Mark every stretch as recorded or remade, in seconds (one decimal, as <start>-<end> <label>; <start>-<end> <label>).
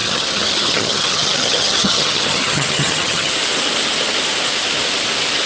0.0-3.3 remade; 3.3-5.5 recorded